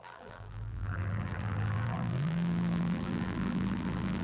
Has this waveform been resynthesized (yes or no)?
yes